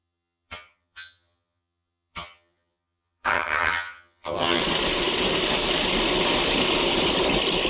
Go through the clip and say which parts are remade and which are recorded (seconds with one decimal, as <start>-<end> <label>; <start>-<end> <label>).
0.0-4.6 remade; 4.6-7.7 recorded